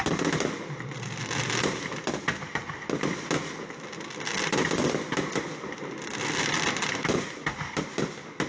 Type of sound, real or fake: real